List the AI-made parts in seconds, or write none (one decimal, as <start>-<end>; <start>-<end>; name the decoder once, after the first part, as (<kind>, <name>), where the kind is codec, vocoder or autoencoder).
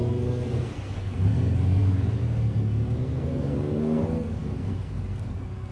0.0-5.7 (codec, SNAC)